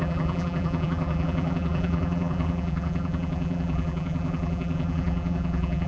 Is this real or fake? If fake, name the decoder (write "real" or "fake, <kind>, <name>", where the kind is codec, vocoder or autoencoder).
fake, vocoder, BigVGAN v2